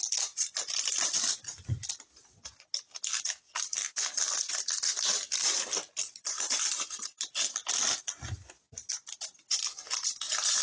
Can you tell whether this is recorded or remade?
recorded